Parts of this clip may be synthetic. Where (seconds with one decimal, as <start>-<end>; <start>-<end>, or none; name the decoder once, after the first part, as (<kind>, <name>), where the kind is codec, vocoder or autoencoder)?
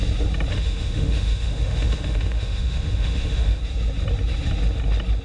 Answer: 0.5-3.6 (autoencoder, DAC-VAE)